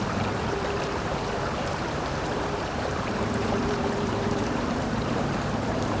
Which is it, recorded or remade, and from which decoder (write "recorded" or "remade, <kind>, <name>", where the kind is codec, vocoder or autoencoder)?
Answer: remade, vocoder, BigVGAN v2